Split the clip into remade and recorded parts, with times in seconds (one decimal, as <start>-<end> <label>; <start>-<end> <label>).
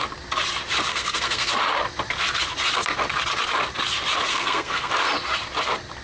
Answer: 0.0-0.9 recorded; 0.9-1.5 remade; 1.5-4.3 recorded; 4.3-4.9 remade; 4.9-6.0 recorded